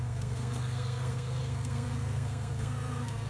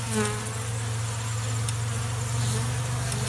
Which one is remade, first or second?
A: first